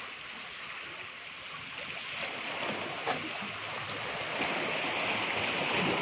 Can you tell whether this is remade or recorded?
recorded